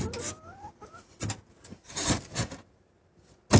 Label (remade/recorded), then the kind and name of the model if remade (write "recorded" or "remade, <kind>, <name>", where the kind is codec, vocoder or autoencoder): recorded